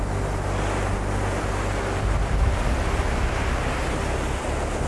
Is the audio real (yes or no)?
yes